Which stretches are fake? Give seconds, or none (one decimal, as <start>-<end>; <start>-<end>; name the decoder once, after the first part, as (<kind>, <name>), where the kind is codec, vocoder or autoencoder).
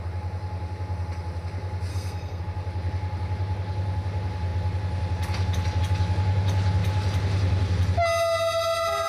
1.9-2.4 (codec, SNAC)